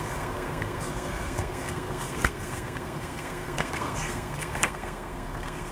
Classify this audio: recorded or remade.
remade